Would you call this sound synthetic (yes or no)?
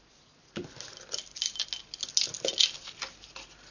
no